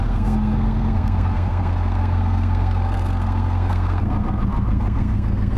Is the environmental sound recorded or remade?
remade